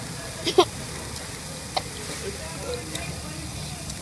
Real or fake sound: real